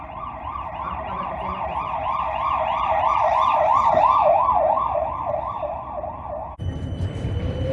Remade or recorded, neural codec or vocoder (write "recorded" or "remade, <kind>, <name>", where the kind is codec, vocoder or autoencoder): remade, vocoder, BigVGAN v2